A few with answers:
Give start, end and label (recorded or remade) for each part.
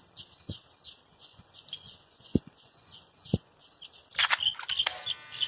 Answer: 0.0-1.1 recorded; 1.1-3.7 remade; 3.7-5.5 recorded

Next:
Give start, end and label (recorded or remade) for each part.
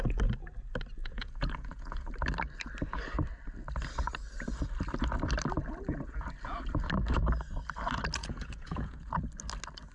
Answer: 0.0-1.0 recorded; 1.0-2.1 remade; 2.1-8.2 recorded; 8.2-9.1 remade; 9.1-9.9 recorded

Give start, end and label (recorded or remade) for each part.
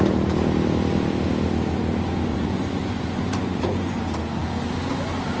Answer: 0.0-2.3 recorded; 2.3-4.0 remade; 4.0-5.4 recorded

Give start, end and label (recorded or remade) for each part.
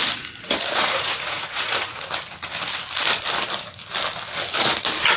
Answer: 0.0-0.7 recorded; 0.7-2.1 remade; 2.1-5.2 recorded